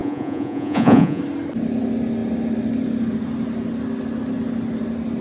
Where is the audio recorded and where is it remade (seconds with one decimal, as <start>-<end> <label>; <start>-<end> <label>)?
0.0-1.2 remade; 1.2-5.2 recorded